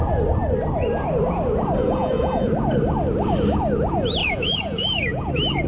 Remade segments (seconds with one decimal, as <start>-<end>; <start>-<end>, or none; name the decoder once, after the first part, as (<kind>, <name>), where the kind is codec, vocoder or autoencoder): 2.0-2.6 (vocoder, Vocos); 4.2-5.3